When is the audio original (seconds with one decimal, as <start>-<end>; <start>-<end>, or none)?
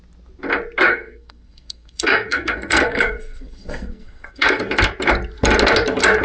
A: 0.0-0.9; 4.6-6.2